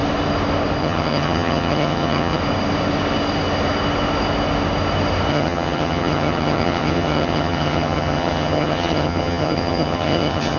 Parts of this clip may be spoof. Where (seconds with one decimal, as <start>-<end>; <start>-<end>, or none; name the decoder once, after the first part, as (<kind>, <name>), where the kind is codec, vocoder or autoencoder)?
0.8-2.4 (vocoder, HiFi-GAN); 5.3-10.6